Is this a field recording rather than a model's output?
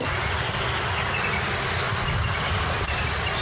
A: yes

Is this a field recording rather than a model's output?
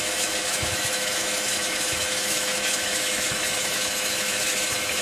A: no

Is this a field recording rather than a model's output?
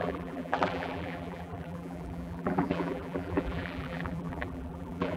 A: no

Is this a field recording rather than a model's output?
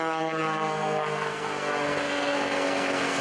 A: no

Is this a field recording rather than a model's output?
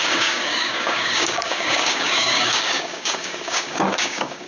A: no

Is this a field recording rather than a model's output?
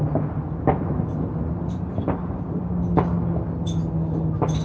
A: yes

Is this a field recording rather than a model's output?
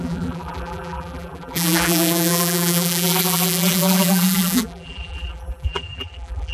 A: no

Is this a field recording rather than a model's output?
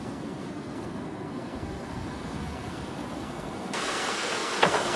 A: no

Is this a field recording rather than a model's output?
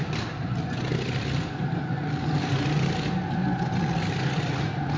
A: yes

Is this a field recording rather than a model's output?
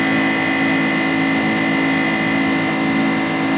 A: yes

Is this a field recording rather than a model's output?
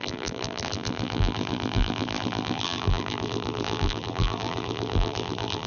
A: no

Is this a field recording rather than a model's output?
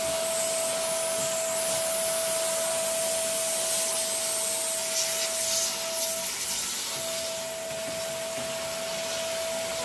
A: yes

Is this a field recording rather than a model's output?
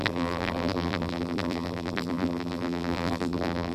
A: no